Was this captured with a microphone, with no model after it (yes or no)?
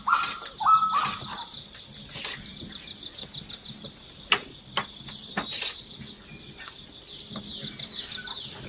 yes